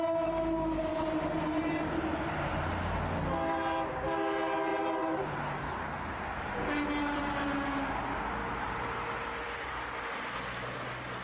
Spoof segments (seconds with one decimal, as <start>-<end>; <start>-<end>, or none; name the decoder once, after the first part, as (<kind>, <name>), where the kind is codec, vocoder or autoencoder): 0.9-2.7 (vocoder, BigVGAN v2); 4.7-7.2; 8.4-9.7